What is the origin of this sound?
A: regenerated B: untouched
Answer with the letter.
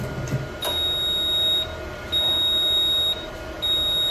B